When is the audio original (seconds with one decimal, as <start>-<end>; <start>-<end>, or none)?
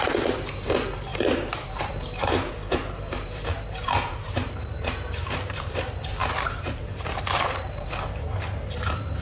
none